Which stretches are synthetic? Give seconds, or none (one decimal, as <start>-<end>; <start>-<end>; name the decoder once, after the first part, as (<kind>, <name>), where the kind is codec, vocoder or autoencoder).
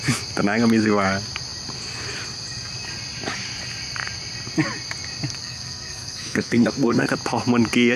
5.4-7.1 (codec, SNAC)